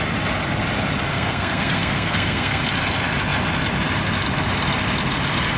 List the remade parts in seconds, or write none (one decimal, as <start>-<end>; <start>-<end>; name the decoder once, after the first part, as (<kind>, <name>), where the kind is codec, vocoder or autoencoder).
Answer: 1.1-2.6 (codec, SNAC)